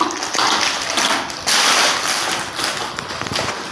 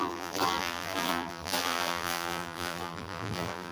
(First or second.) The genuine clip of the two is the first